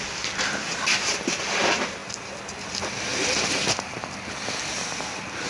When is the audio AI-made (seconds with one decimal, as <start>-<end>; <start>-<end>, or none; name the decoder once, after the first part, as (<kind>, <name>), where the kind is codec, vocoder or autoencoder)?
2.0-5.5 (vocoder, BigVGAN v2)